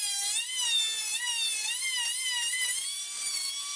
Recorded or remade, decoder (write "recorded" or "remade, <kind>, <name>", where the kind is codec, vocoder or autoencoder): remade, vocoder, BigVGAN v2